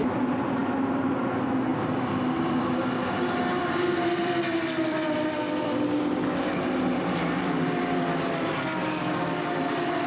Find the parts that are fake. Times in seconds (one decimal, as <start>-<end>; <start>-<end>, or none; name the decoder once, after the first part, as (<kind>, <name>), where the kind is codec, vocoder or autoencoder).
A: 1.7-2.8 (vocoder, BigVGAN v2); 3.6-8.6